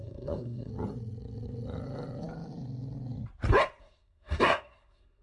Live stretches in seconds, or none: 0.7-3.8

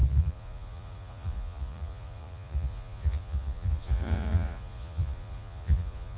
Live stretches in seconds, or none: none

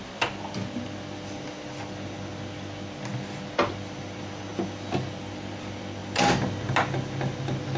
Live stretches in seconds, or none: 0.0-7.8

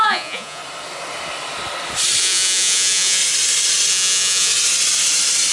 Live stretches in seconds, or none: 0.6-2.2; 3.2-3.9; 4.5-5.5

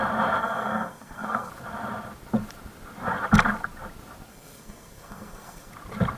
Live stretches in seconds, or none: 0.0-0.4; 1.5-4.3; 5.7-6.2

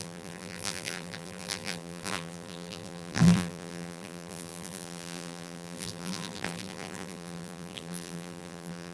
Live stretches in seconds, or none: none

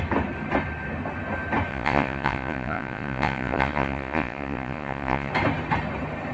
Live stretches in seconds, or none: 0.0-1.7; 5.3-6.3